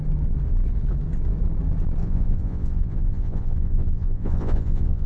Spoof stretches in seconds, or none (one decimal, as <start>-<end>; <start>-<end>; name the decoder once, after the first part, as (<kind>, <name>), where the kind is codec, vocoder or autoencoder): 2.0-5.1 (vocoder, Vocos)